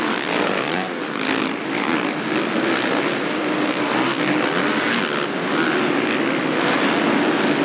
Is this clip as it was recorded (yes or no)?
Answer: yes